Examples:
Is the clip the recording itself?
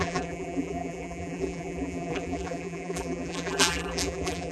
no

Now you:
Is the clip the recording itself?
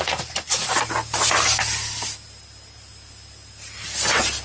yes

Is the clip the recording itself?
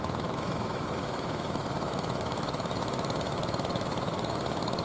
no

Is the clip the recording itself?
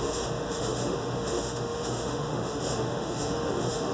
no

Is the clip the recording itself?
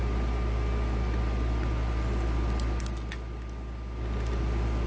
yes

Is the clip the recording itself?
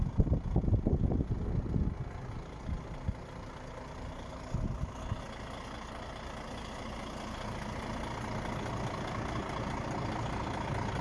yes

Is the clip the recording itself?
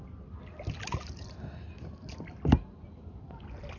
yes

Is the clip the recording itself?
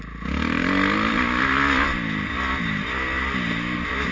yes